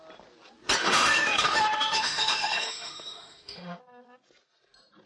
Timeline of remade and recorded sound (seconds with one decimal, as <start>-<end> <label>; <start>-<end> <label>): 0.0-0.8 recorded; 0.8-3.8 remade; 3.8-5.1 recorded